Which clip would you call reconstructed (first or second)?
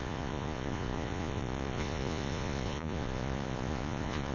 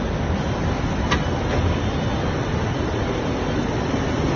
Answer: first